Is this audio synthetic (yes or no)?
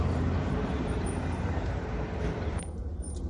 yes